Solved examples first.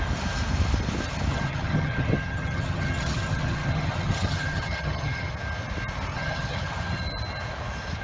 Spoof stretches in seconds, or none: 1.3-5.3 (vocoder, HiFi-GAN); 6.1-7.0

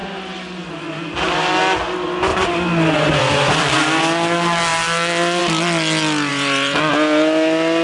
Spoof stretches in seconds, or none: 2.3-4.0 (vocoder, BigVGAN v2); 6.3-6.9

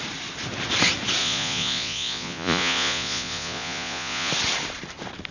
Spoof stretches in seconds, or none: 1.2-4.3 (vocoder, Vocos)

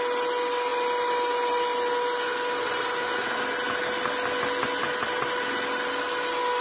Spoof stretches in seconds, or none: none

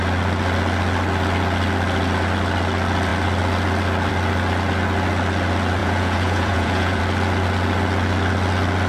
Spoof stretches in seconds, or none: 5.8-7.0 (vocoder, Vocos)

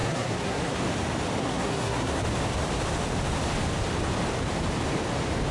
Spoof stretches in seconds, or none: 0.0-0.8 (codec, SNAC); 1.4-2.2

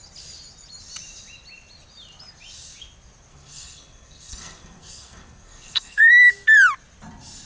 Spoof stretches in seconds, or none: 3.3-6.1 (codec, SNAC)

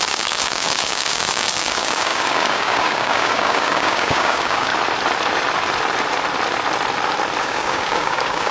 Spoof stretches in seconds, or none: 0.0-4.7 (codec, DAC); 7.4-8.5